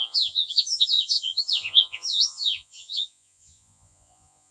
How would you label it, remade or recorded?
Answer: remade